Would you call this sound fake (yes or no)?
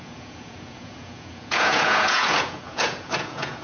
yes